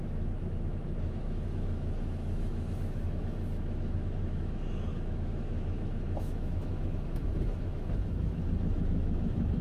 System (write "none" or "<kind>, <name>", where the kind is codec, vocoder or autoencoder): autoencoder, DAC-VAE